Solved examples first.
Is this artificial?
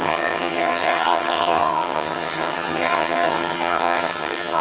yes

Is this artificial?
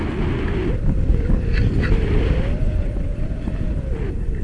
no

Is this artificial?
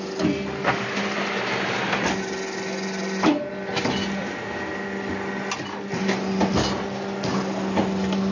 no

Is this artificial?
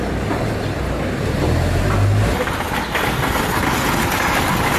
no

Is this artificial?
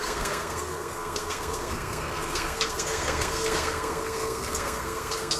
yes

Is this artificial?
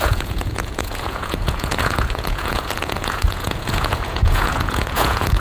yes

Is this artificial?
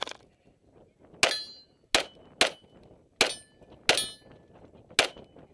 no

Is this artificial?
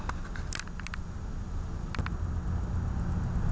no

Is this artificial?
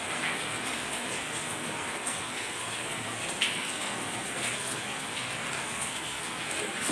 yes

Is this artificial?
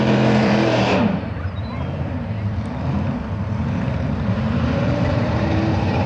yes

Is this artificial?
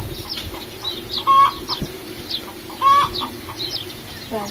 no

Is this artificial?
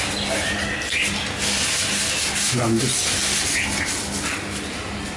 no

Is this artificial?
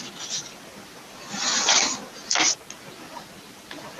no